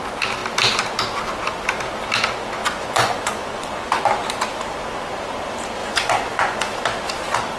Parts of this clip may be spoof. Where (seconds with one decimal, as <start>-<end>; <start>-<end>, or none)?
2.6-4.0; 5.8-6.7